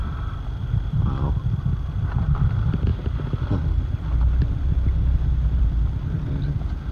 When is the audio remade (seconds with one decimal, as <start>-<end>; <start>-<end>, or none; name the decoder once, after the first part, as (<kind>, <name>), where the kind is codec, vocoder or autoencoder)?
0.0-2.9 (vocoder, BigVGAN v2); 5.6-6.9